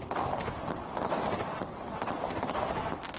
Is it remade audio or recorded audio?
recorded